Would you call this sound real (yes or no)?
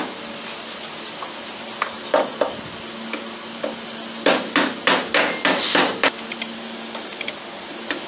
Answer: yes